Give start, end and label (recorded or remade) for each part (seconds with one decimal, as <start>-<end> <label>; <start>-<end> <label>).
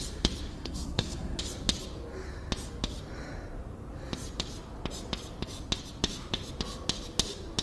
0.0-0.5 recorded; 0.5-1.4 remade; 1.4-7.6 recorded